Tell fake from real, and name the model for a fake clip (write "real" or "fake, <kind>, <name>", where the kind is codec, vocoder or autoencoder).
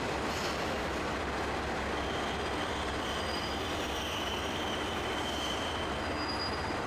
real